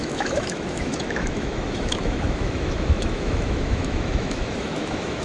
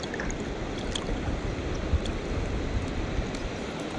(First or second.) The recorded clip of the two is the second